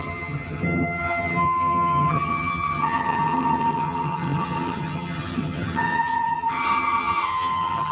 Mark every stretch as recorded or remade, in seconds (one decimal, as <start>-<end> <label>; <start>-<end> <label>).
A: 0.0-7.9 remade